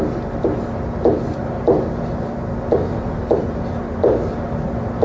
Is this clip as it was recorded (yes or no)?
yes